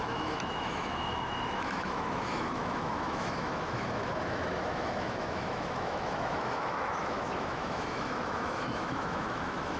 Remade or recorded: remade